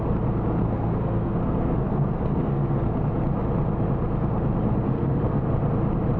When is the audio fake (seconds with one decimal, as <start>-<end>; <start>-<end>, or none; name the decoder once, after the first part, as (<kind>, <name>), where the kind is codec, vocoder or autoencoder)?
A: 0.6-3.1 (codec, SNAC); 4.9-5.4

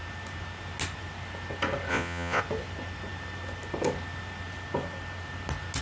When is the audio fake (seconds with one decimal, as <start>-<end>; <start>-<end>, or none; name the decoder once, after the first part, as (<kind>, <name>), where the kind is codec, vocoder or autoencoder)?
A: 1.9-2.4 (vocoder, Vocos)

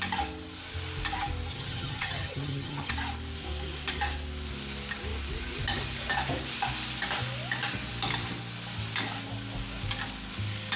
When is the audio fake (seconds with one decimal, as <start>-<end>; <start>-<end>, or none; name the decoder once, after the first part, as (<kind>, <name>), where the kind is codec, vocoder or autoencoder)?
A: 1.5-2.9 (vocoder, HiFi-GAN)

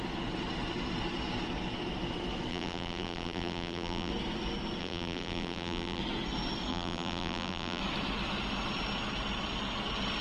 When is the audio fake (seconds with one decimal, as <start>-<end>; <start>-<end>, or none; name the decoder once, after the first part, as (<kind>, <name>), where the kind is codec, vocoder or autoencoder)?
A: 2.5-4.1 (vocoder, BigVGAN v2); 4.8-6.0; 6.7-7.8